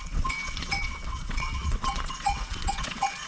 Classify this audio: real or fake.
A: fake